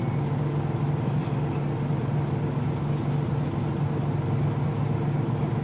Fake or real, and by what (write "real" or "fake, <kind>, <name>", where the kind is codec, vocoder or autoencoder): real